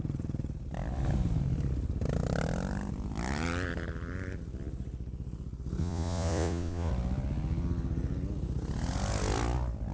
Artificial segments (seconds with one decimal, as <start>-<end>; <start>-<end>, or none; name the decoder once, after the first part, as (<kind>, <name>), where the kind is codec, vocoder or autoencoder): 5.8-6.9 (vocoder, Vocos)